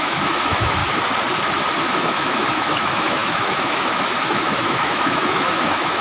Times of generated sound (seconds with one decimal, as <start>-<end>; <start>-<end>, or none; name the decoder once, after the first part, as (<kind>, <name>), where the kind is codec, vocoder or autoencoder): 0.0-0.8 (autoencoder, DAC-VAE); 1.8-6.0